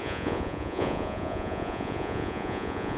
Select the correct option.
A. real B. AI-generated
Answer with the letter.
B